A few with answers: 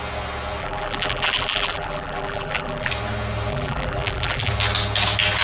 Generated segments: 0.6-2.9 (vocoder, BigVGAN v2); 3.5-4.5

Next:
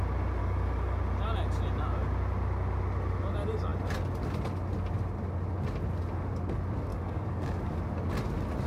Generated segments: 0.4-1.0 (codec, DAC); 6.9-7.8

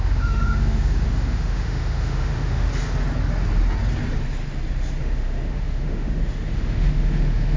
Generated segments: 0.0-2.7 (autoencoder, DAC-VAE); 5.0-7.6

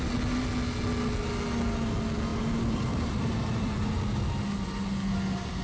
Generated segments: 2.3-4.0 (vocoder, BigVGAN v2)

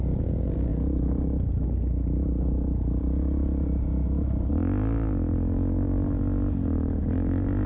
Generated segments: none

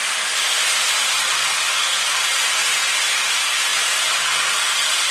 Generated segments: 3.7-4.5 (vocoder, BigVGAN v2)

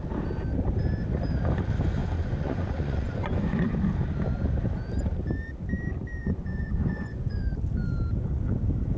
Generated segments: 2.0-3.7 (vocoder, Vocos); 6.2-7.5

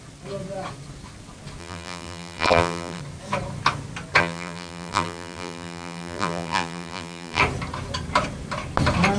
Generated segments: 1.6-3.0 (vocoder, BigVGAN v2); 4.2-7.4